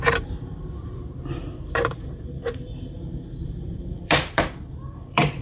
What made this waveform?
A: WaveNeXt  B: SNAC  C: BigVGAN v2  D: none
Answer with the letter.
C